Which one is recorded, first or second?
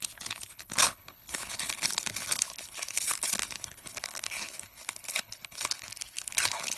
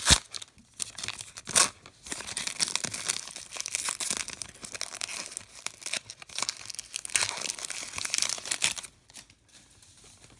second